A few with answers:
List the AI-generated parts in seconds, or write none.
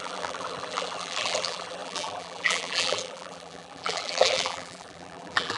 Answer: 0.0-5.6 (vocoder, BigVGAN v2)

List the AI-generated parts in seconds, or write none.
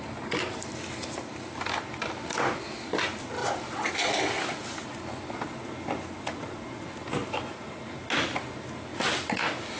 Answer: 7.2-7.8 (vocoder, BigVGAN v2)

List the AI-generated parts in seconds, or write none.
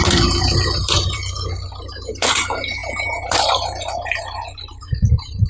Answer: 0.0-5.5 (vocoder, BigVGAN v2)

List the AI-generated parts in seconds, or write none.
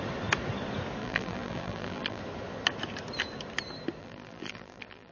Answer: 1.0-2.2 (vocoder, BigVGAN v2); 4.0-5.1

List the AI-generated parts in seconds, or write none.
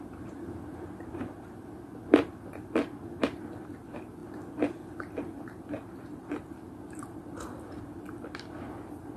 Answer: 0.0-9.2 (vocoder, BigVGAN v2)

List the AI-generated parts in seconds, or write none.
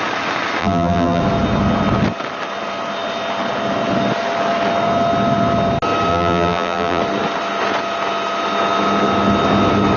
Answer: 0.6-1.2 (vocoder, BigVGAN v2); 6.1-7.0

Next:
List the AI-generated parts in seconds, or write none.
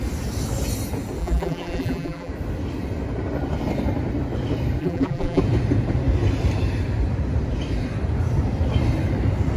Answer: 1.2-2.3 (vocoder, BigVGAN v2); 4.8-5.4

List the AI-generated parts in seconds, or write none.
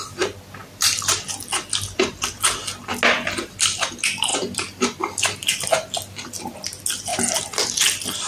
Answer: 0.6-2.3 (vocoder, BigVGAN v2); 4.3-5.0; 7.1-8.3